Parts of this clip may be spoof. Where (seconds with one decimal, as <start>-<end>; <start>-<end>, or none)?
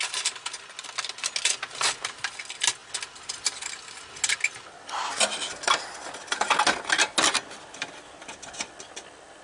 none